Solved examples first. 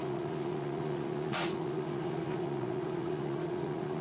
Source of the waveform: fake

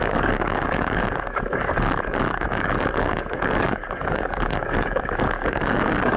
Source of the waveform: fake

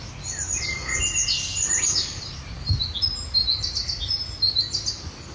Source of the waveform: real